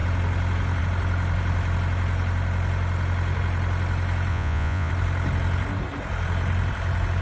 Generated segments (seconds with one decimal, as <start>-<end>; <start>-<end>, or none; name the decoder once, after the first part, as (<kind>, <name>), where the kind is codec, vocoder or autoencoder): 4.3-4.9 (vocoder, Vocos)